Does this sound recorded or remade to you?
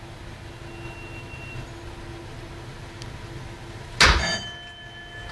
recorded